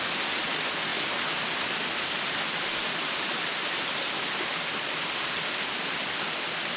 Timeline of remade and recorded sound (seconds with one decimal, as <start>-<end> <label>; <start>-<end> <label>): 0.0-6.8 recorded